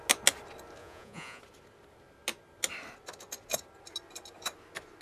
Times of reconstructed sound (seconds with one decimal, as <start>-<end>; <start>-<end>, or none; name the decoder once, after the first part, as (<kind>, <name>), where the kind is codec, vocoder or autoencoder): 0.8-1.4 (vocoder, Vocos)

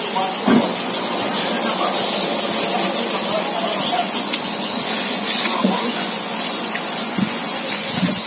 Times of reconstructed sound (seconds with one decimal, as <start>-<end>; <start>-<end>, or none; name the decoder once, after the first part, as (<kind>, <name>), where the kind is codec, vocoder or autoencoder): 0.0-1.3 (vocoder, Vocos); 3.3-8.3

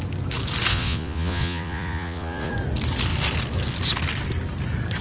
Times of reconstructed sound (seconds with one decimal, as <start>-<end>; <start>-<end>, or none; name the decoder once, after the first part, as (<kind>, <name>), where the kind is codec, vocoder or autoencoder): 0.7-2.5 (vocoder, Vocos)